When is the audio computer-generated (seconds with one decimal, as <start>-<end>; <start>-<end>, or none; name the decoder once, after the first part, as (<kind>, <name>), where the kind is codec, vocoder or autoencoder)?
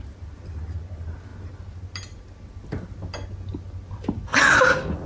none